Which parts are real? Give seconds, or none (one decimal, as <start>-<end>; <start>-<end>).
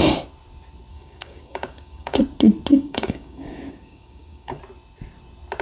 0.0-0.9; 2.2-2.7; 4.6-5.6